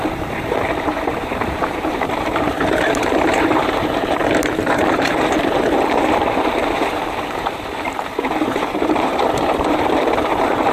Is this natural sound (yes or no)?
no